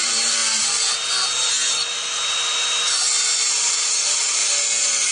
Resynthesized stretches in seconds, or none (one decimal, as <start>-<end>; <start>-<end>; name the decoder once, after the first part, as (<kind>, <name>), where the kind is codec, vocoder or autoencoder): 0.0-0.4 (vocoder, BigVGAN v2); 3.5-4.4